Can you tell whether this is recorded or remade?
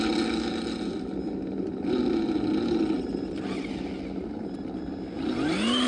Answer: recorded